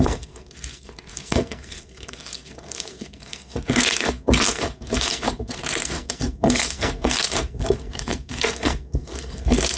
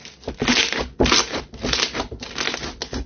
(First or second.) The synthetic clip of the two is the first